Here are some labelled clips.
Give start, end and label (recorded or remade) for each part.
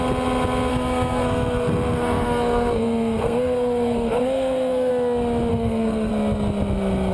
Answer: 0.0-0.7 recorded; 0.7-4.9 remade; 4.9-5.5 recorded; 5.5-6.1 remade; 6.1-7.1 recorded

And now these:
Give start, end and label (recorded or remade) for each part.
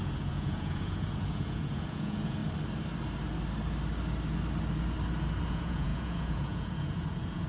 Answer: 0.0-2.4 remade; 2.4-5.5 recorded; 5.5-7.5 remade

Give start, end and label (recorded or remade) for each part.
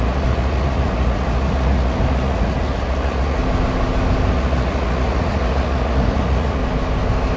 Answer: 0.0-3.4 remade; 3.4-4.3 recorded; 4.3-6.6 remade; 6.6-7.4 recorded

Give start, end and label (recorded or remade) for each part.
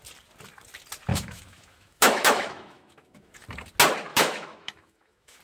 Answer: 0.0-1.1 recorded; 1.1-3.4 remade; 3.4-4.1 recorded; 4.1-5.4 remade